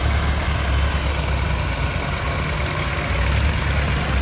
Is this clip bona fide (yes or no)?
yes